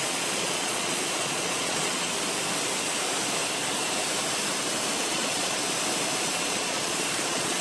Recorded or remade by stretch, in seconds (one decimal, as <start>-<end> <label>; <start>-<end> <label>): 0.0-2.1 remade; 2.1-5.0 recorded; 5.0-5.6 remade; 5.6-6.2 recorded; 6.2-7.6 remade